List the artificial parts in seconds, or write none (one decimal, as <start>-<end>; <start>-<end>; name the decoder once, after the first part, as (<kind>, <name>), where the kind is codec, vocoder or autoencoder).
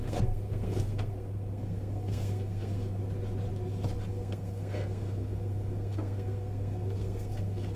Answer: 0.0-3.0 (codec, SNAC); 4.1-7.8